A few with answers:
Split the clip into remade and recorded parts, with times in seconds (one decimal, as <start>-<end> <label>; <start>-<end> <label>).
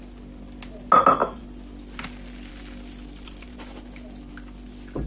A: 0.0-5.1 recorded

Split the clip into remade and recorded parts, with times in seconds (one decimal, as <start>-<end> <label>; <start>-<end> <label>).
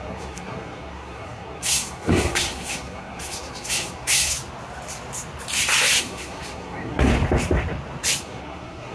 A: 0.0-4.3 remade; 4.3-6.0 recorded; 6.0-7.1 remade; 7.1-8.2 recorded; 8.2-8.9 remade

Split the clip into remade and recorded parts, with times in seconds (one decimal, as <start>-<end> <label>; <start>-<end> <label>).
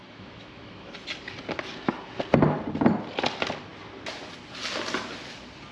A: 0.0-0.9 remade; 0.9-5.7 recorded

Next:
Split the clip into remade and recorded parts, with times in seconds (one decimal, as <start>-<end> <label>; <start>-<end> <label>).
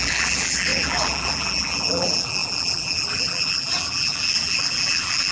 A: 0.0-5.3 remade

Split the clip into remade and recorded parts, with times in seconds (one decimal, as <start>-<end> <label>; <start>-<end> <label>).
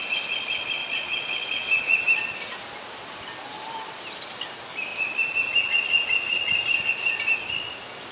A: 0.0-0.8 recorded; 0.8-2.0 remade; 2.0-8.1 recorded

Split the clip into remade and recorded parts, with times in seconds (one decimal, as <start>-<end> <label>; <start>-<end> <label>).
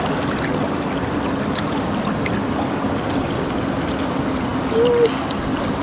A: 0.0-5.8 recorded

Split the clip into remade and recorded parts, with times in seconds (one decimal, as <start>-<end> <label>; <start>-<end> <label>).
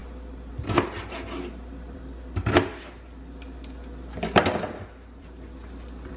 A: 0.0-0.5 recorded; 0.5-6.2 remade